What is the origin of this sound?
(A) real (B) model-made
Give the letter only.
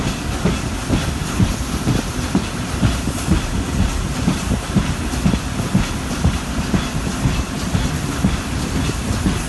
A